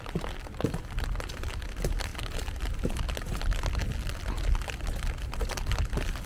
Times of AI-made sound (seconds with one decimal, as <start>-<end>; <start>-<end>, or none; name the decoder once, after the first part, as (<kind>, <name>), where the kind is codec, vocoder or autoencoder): 2.1-2.9 (vocoder, BigVGAN v2)